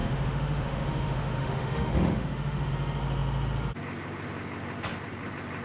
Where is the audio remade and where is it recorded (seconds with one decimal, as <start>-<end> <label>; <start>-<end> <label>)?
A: 0.0-2.7 remade; 2.7-5.6 recorded